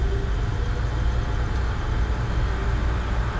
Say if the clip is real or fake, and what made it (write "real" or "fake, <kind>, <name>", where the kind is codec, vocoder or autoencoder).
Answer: real